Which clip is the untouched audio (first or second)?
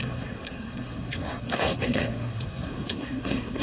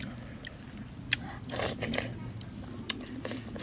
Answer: second